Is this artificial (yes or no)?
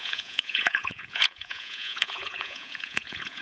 yes